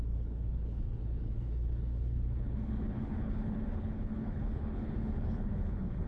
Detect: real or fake fake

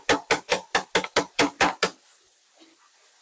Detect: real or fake real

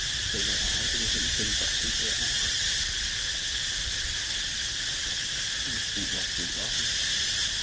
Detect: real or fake real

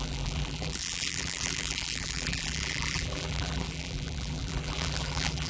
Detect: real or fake fake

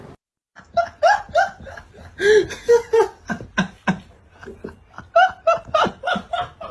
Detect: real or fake real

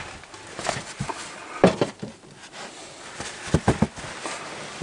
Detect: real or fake real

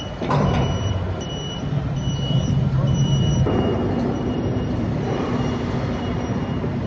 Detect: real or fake fake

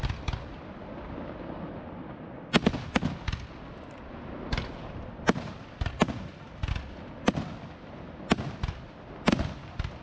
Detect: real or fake real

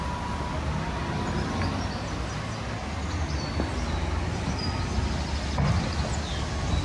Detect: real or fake real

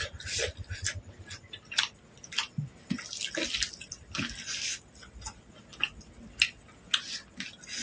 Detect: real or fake real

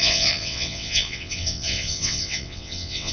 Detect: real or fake fake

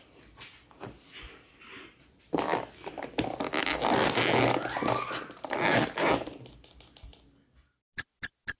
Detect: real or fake real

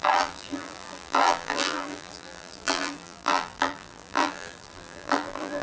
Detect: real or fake fake